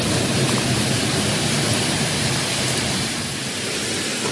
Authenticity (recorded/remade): recorded